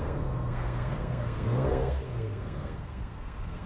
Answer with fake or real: fake